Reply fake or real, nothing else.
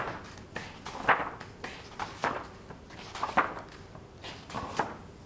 real